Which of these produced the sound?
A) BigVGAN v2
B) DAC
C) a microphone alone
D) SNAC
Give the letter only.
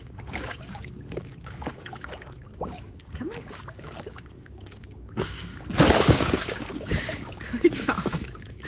B